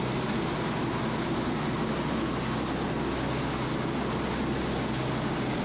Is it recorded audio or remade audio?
recorded